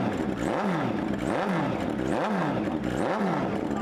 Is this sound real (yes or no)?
yes